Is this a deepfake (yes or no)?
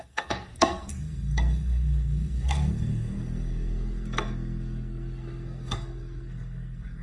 yes